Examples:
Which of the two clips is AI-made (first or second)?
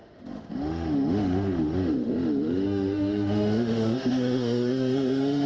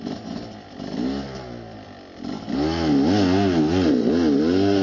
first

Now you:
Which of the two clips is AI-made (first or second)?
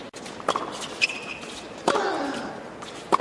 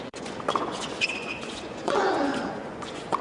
second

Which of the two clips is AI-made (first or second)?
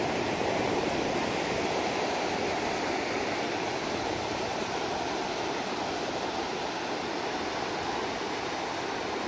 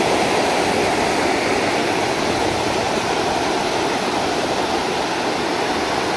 first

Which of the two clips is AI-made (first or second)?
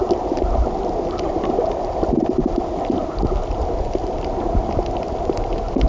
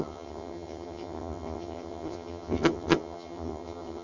second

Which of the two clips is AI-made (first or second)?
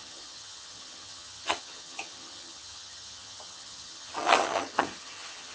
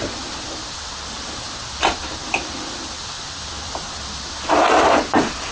first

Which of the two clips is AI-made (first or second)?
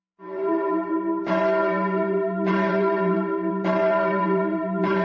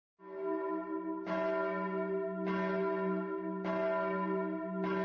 first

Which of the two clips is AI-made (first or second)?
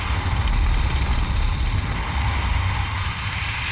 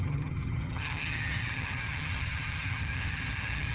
second